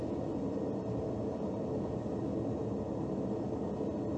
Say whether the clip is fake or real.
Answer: real